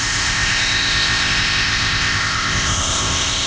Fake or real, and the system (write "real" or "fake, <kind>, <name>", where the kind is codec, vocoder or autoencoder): fake, codec, ZipCodec